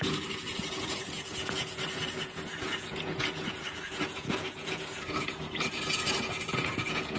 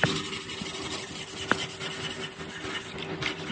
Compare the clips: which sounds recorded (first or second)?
second